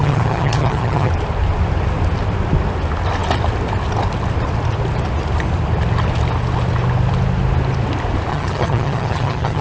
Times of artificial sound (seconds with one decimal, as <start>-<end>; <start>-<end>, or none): 0.0-1.1; 8.3-9.6